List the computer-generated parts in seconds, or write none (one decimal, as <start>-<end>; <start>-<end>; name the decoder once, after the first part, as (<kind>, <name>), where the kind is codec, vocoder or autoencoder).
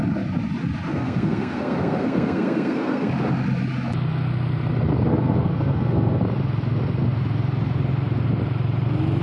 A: 0.9-3.1 (codec, SNAC); 5.1-6.2